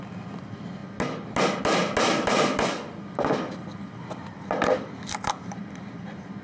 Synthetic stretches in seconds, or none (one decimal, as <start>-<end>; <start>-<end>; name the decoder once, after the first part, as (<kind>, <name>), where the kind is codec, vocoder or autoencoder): none